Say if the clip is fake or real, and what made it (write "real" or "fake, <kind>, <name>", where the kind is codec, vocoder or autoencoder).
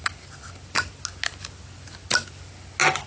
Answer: real